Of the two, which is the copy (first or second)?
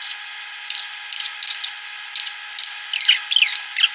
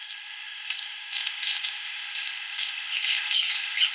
second